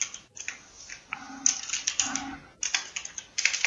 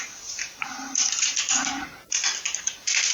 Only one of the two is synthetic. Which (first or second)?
second